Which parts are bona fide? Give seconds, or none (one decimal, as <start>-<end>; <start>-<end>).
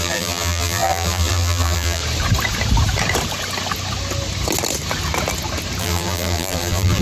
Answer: 2.0-5.8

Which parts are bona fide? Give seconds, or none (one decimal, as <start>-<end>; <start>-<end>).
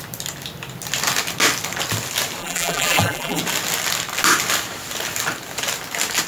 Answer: 0.0-2.4; 3.4-6.3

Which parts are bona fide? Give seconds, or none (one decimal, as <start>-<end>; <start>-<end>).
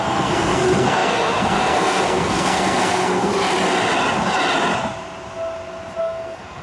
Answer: 3.3-6.0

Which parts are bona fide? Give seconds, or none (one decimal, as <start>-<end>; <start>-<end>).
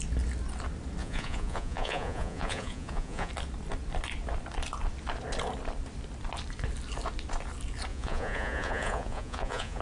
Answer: 0.0-1.0; 3.3-7.9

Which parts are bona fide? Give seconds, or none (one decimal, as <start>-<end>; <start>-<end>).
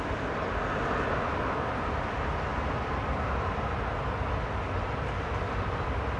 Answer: 0.0-6.2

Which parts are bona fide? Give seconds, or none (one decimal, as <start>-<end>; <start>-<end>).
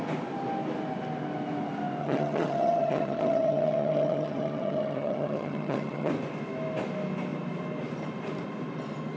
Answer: 0.0-2.0; 6.1-9.2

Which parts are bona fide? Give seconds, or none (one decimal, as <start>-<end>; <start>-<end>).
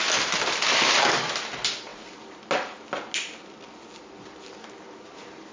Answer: 0.0-5.5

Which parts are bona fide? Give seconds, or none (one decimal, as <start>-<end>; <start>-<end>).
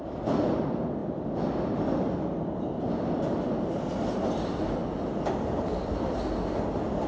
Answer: 0.0-7.1